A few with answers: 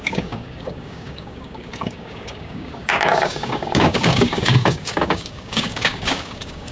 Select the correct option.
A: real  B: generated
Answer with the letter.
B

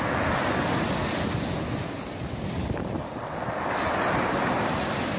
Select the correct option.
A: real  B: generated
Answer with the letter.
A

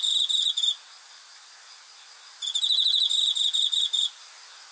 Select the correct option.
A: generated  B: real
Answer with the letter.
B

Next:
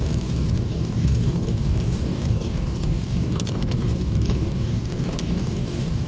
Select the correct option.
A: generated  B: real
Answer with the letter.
A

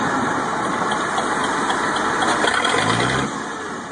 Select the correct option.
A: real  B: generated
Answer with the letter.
A